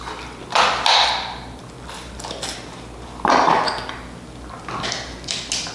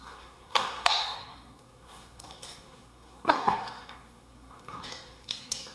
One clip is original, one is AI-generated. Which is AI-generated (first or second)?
second